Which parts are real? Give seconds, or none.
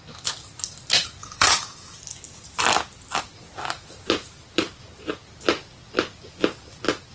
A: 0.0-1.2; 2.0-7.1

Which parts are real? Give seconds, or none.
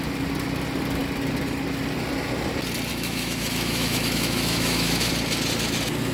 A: 0.0-2.9; 5.1-6.1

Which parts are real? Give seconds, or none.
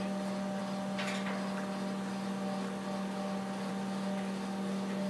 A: 0.0-5.1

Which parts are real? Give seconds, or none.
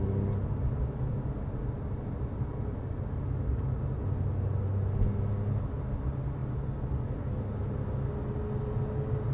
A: 0.0-9.3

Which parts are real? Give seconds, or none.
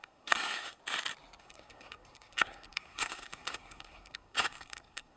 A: 0.8-1.4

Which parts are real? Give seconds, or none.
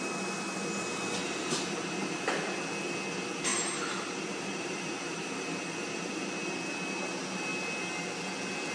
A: 0.0-1.2; 2.2-3.5; 6.3-8.7